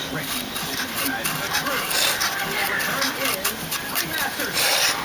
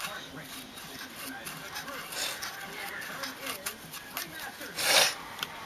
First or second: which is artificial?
first